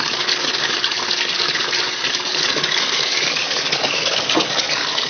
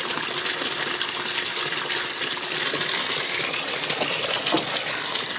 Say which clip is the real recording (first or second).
second